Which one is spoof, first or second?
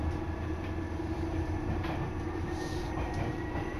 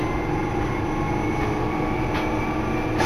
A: first